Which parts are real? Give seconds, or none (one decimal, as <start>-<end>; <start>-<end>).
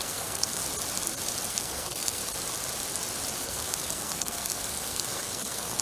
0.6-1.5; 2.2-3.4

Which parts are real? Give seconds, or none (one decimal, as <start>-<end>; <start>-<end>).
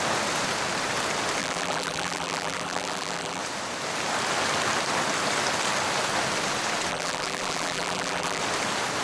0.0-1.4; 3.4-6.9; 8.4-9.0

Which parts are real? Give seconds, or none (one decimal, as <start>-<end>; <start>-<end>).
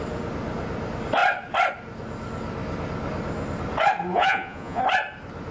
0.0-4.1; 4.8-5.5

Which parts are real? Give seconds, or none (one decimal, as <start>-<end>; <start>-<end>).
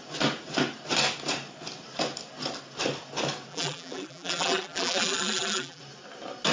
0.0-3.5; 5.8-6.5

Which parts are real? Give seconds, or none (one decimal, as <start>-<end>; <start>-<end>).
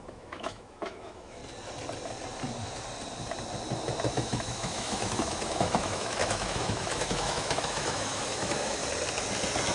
1.4-4.1; 8.8-9.7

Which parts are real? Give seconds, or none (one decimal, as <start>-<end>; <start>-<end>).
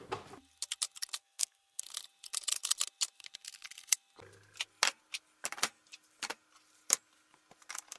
0.0-1.2; 1.8-8.0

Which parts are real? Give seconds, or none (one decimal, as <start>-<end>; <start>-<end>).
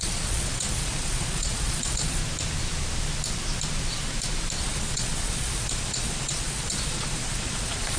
2.2-4.6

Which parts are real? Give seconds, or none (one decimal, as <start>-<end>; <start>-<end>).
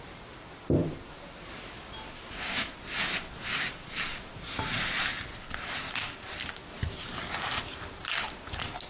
0.0-8.9